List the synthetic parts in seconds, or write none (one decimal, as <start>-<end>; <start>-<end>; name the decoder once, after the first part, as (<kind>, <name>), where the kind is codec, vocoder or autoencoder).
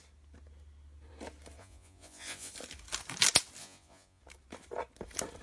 1.6-2.5 (vocoder, Vocos); 3.6-4.2